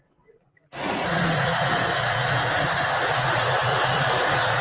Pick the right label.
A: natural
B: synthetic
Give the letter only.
B